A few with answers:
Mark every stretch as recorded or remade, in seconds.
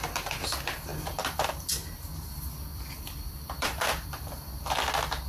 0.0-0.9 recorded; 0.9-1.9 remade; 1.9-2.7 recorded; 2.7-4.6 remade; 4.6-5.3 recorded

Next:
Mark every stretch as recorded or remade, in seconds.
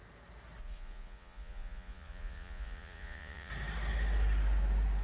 0.0-0.6 recorded; 0.6-3.5 remade; 3.5-5.0 recorded